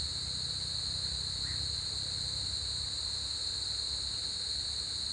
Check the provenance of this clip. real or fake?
real